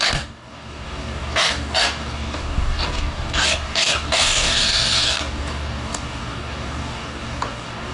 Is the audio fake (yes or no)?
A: yes